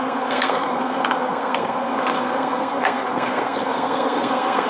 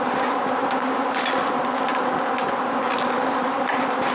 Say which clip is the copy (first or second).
first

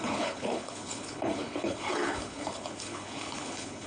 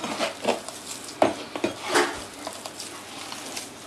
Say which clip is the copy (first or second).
first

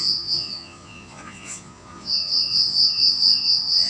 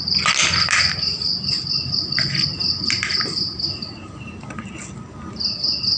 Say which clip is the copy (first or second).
first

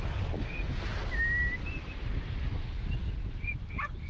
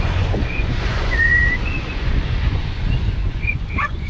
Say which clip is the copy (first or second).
second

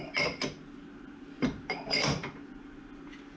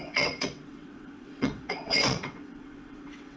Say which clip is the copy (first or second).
second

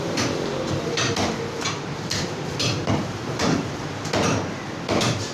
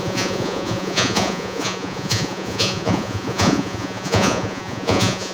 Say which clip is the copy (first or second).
second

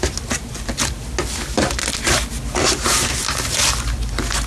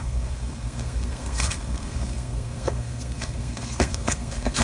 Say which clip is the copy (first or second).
second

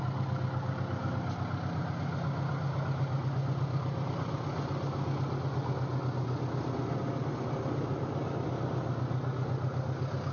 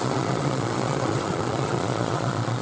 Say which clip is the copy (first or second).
second